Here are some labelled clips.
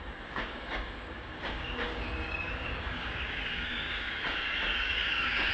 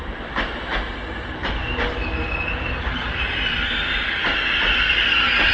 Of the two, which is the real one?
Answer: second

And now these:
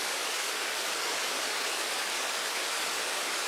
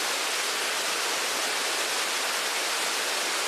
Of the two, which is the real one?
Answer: second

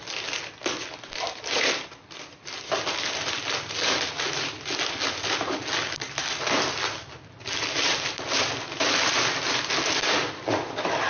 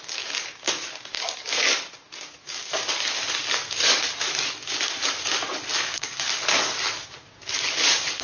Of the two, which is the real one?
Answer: first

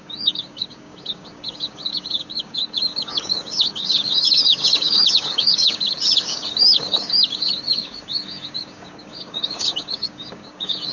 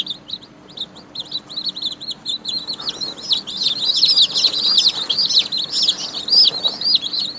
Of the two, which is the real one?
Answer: second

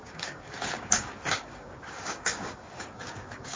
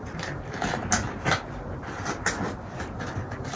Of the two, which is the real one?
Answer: second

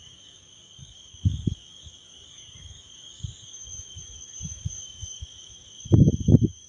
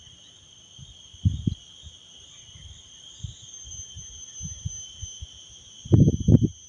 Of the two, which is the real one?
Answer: second